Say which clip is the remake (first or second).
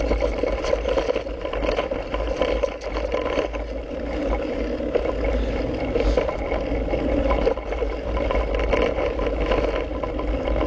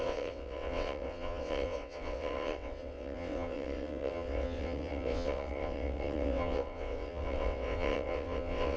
second